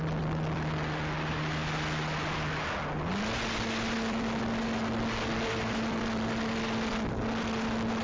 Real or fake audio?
real